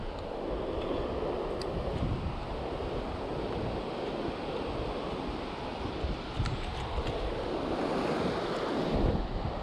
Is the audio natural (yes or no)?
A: yes